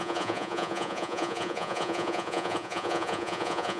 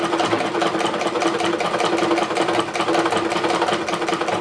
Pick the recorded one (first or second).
second